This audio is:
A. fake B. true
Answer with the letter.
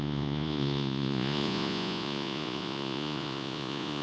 A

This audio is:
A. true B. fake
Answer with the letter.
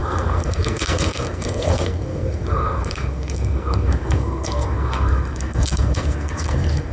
B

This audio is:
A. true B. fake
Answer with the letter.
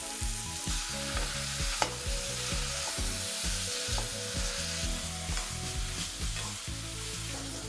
A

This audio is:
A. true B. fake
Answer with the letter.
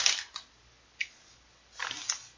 A